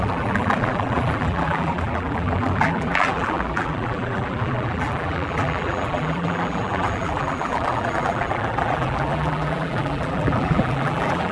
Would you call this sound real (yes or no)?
no